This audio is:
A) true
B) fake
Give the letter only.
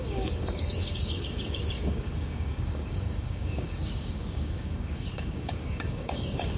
B